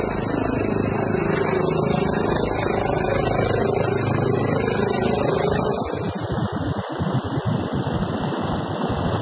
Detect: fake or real real